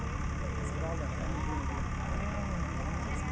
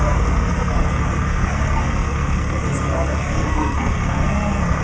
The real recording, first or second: first